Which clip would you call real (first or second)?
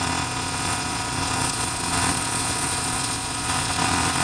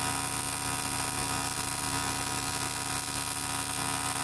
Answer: second